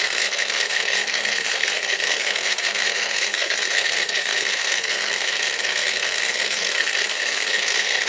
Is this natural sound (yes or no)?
no